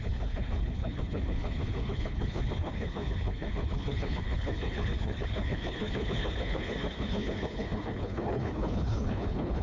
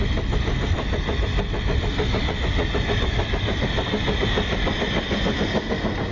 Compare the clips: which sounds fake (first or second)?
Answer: first